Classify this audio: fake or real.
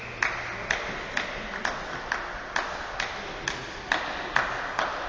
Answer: real